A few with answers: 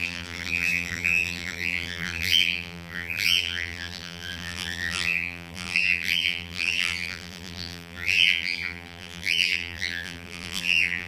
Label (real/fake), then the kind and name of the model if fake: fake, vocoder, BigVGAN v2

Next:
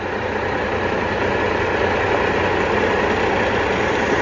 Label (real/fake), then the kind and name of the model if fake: real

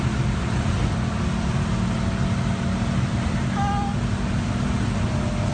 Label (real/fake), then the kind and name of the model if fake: real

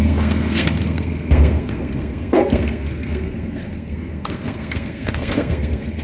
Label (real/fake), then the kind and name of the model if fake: fake, codec, SNAC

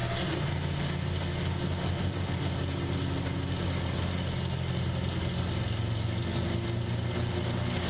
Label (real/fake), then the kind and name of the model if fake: real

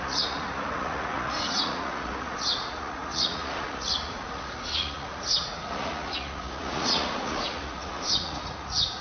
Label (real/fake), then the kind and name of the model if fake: fake, vocoder, Vocos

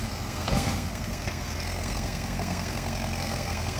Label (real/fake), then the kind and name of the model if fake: fake, codec, SNAC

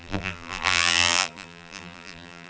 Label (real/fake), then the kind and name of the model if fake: fake, vocoder, BigVGAN v2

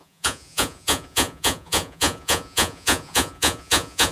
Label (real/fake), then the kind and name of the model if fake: fake, vocoder, Vocos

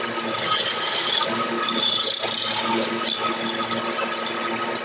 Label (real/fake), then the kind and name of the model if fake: real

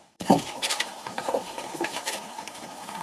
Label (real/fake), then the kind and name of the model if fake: fake, codec, SNAC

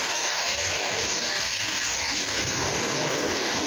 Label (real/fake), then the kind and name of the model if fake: fake, codec, DAC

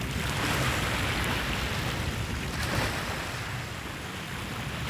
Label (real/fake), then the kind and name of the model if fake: real